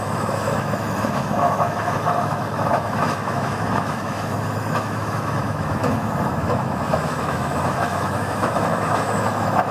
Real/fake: fake